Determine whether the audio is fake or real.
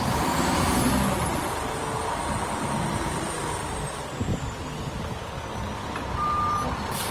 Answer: real